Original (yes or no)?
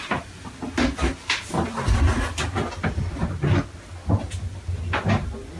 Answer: yes